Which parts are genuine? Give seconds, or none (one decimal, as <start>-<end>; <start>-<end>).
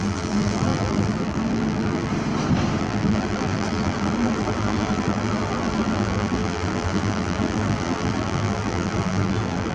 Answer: 2.1-2.8